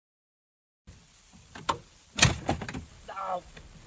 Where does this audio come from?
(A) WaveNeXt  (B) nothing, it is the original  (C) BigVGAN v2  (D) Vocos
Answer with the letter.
B